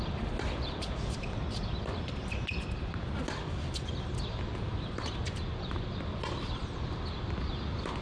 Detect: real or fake real